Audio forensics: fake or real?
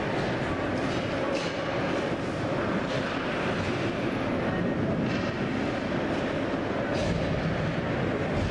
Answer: real